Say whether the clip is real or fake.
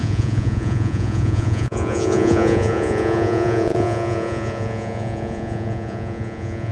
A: fake